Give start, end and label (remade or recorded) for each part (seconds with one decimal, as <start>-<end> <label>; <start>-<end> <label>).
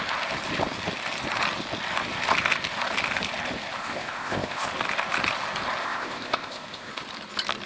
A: 0.0-3.8 recorded; 3.8-4.7 remade; 4.7-5.8 recorded; 5.8-6.9 remade; 6.9-7.7 recorded